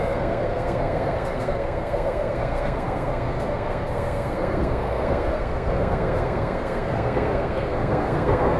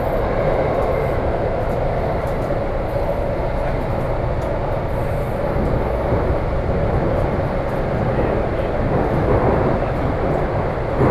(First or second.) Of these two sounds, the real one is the second